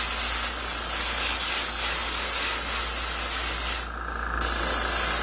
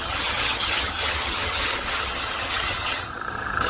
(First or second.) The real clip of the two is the first